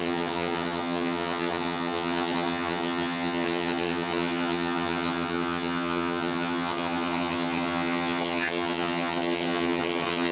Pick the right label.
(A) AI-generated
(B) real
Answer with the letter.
A